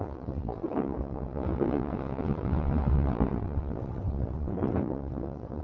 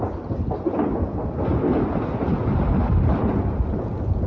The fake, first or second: first